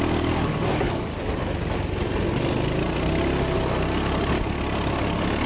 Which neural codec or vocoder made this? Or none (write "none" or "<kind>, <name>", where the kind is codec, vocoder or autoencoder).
none